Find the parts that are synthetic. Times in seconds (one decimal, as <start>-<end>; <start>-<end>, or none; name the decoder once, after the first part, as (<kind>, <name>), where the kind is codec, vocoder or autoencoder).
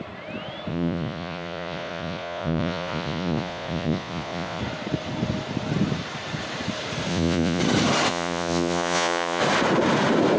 0.7-4.6 (vocoder, Vocos); 7.1-7.6; 8.1-9.4